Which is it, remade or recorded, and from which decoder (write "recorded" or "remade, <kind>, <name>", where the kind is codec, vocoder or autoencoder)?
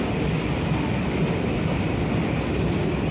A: recorded